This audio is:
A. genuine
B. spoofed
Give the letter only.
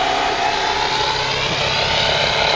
A